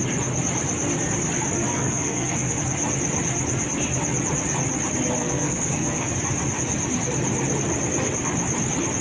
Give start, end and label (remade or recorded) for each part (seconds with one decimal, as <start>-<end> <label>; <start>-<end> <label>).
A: 0.0-1.7 recorded; 1.7-2.6 remade; 2.6-5.2 recorded; 5.2-6.1 remade; 6.1-9.0 recorded